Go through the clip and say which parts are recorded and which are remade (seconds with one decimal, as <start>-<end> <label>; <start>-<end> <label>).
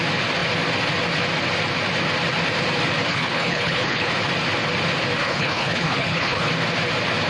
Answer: 0.0-3.1 recorded; 3.1-4.1 remade; 4.1-5.2 recorded; 5.2-6.5 remade; 6.5-7.3 recorded